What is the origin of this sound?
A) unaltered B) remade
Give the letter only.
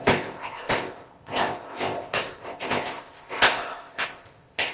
B